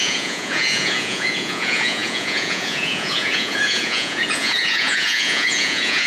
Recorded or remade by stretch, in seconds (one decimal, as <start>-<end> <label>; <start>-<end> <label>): 0.0-6.1 remade

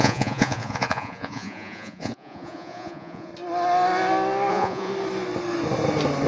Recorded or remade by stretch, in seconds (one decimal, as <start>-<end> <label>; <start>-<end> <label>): 0.0-3.3 remade; 3.3-4.5 recorded; 4.5-4.9 remade; 4.9-6.3 recorded

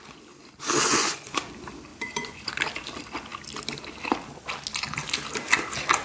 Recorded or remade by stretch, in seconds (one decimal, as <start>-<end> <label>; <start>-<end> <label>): 0.0-0.9 recorded; 0.9-1.4 remade; 1.4-1.9 recorded; 1.9-2.5 remade; 2.5-6.0 recorded